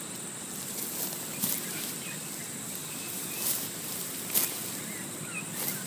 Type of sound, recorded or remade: recorded